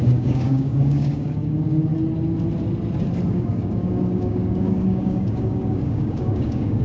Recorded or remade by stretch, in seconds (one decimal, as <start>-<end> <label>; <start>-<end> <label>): 0.0-1.9 remade; 1.9-3.3 recorded; 3.3-6.8 remade